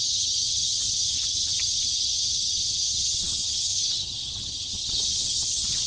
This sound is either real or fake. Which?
fake